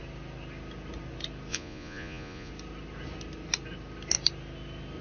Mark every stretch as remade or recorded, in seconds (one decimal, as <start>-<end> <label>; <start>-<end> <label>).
0.0-1.5 recorded; 1.5-2.5 remade; 2.5-5.0 recorded